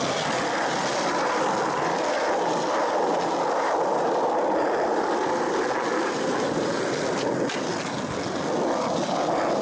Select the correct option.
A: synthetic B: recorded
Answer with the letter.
B